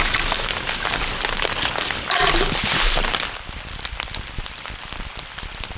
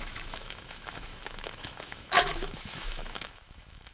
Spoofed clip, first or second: second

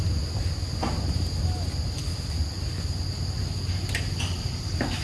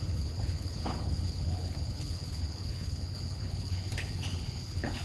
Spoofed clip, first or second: second